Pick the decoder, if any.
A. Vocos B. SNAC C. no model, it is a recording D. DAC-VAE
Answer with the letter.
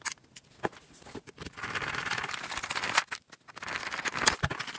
C